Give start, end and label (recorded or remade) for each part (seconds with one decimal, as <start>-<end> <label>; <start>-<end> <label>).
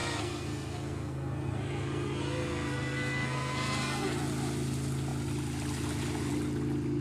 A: 0.0-4.2 remade; 4.2-7.0 recorded